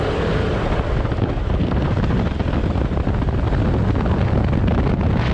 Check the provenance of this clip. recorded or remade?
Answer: recorded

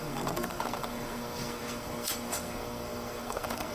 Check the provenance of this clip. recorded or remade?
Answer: remade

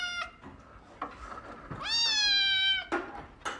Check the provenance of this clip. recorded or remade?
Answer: recorded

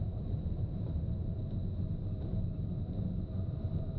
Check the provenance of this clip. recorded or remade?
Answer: recorded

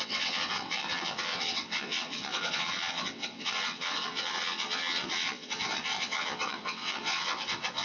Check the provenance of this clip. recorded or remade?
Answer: remade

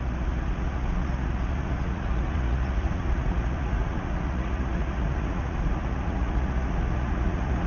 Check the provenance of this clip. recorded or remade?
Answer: remade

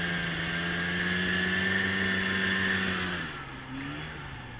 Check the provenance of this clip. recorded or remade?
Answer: recorded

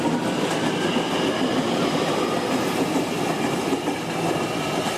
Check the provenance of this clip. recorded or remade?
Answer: recorded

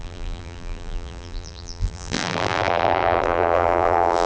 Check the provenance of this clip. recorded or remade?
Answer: remade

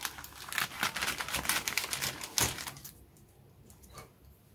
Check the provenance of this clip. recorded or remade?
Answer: recorded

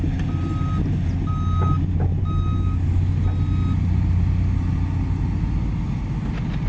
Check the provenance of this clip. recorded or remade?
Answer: recorded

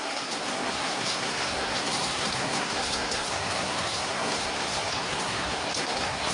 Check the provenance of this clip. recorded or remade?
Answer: remade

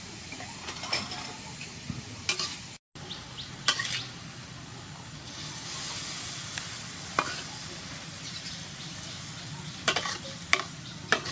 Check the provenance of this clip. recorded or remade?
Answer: recorded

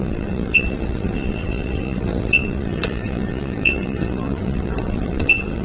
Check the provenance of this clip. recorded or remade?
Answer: remade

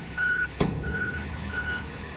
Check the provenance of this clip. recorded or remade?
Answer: remade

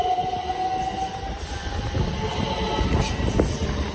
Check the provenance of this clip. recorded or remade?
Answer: recorded